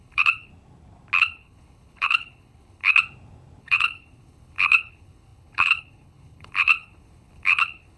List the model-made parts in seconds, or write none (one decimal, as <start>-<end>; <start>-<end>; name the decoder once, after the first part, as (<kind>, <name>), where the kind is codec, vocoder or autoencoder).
0.0-0.5 (codec, HILCodec); 1.2-3.0; 3.6-8.0